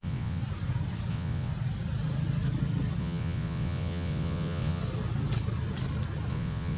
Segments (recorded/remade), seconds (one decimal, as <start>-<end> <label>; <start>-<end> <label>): 0.0-0.4 remade; 0.4-1.1 recorded; 1.1-1.5 remade; 1.5-3.0 recorded; 3.0-4.8 remade; 4.8-6.3 recorded; 6.3-6.8 remade